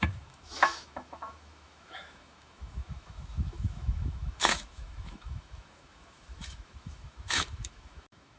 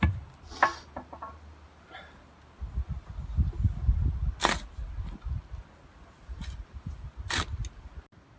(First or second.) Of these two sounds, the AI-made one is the first